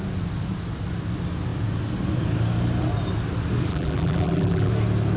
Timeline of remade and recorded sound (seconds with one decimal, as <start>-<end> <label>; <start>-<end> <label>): 0.0-3.7 recorded; 3.7-4.7 remade; 4.7-5.2 recorded